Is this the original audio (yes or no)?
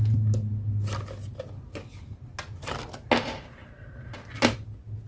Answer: yes